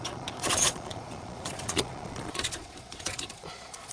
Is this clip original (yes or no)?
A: no